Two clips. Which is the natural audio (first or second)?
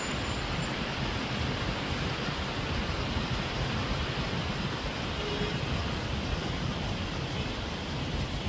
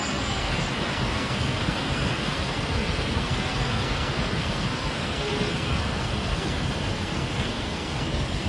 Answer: first